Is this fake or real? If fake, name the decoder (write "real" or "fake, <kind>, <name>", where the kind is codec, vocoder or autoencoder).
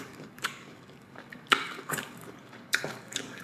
fake, codec, DAC